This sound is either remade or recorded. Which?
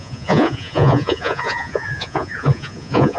remade